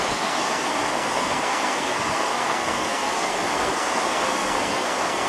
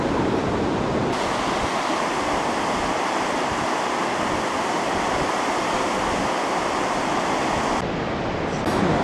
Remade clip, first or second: first